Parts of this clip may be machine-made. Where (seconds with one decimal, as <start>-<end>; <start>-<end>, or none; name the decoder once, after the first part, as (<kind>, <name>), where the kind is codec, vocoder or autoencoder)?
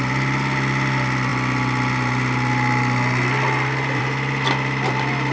none